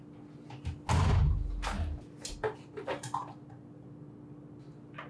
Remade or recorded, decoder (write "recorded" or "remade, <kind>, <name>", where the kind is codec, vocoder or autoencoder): recorded